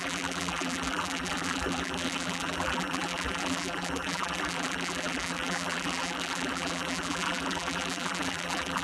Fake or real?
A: fake